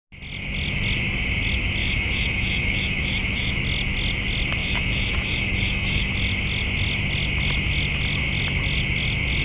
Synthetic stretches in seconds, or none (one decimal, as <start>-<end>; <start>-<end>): 1.8-3.6; 4.6-6.1